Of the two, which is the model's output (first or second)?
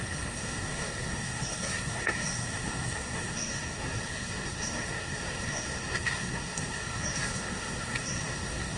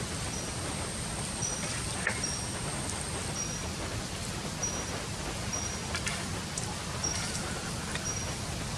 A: first